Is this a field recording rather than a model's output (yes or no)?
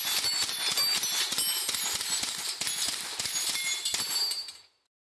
yes